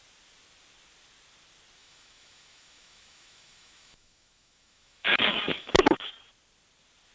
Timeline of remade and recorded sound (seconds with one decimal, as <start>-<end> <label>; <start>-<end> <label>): 0.0-1.8 recorded; 1.8-6.1 remade; 6.1-7.1 recorded